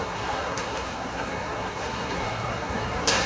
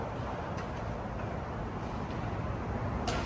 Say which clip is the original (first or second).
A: second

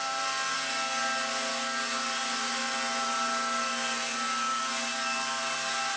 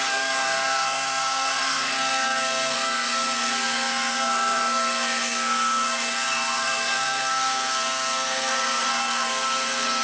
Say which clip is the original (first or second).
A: first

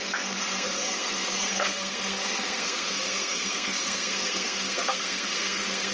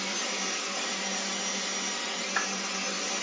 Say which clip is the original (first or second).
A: second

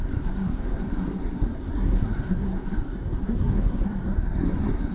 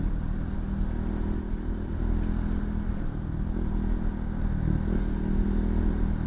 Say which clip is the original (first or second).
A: second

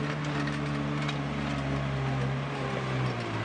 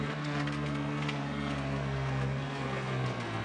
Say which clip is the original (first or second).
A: first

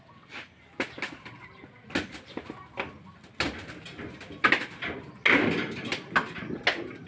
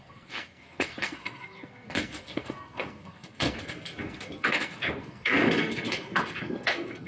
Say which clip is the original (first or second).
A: first